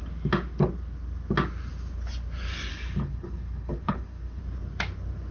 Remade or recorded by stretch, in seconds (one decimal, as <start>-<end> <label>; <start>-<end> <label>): 0.0-2.7 recorded; 2.7-4.4 remade; 4.4-5.3 recorded